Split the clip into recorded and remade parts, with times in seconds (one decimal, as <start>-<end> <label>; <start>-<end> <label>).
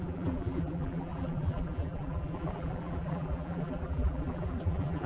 0.0-5.1 remade